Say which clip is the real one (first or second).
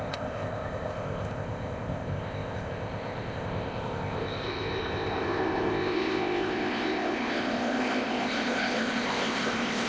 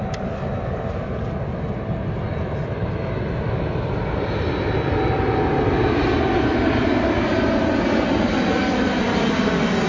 second